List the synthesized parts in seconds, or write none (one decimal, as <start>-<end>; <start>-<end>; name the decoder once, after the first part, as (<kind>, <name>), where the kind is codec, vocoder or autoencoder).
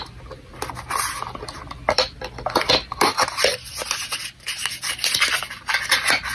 none